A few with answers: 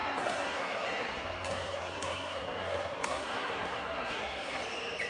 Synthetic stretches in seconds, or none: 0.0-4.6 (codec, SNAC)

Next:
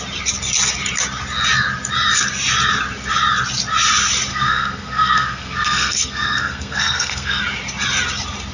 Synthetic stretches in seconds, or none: 4.3-7.4 (codec, SNAC)

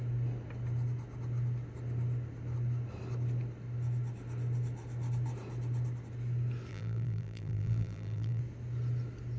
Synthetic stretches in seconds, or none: 6.7-8.4 (vocoder, BigVGAN v2)

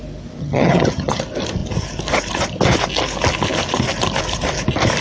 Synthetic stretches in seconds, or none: 0.4-1.2 (vocoder, HiFi-GAN)

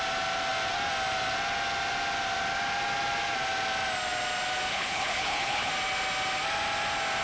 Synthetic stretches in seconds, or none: 4.7-5.7 (codec, HILCodec)

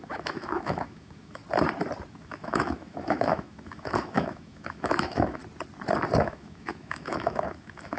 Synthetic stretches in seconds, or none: 0.0-1.4 (autoencoder, DAC-VAE); 2.1-5.4; 6.2-8.0